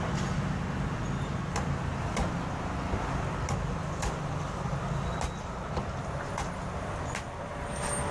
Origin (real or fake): real